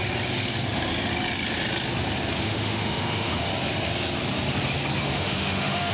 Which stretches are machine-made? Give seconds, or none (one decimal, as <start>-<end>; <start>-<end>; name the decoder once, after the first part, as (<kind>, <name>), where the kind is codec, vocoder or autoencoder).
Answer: 2.4-3.5 (autoencoder, DAC-VAE); 5.0-5.9